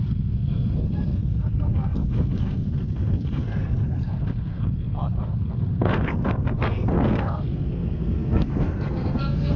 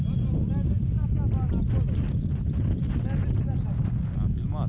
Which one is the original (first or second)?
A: second